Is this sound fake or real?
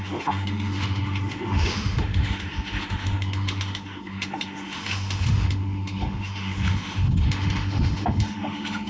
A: fake